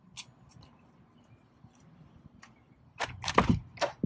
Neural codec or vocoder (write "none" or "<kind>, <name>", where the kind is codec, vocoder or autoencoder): none